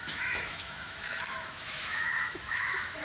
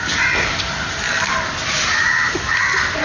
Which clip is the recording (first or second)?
second